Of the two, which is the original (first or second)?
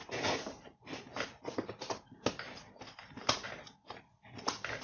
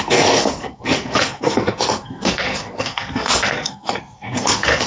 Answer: first